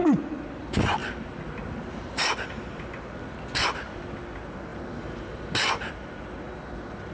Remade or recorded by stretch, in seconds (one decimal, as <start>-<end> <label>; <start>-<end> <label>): 0.0-1.0 recorded; 1.0-2.9 remade; 2.9-4.7 recorded; 4.7-5.9 remade; 5.9-7.1 recorded